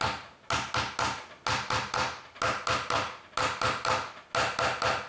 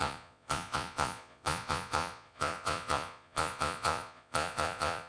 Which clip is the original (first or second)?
first